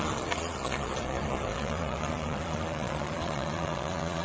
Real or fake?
fake